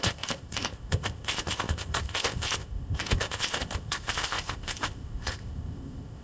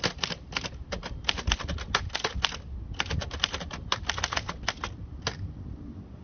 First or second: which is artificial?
first